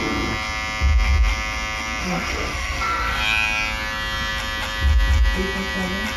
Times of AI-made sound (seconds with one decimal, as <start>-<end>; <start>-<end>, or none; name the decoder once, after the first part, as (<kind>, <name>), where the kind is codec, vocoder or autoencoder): 2.0-3.2 (codec, SNAC)